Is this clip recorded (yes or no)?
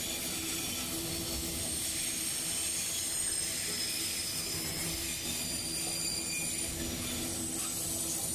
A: yes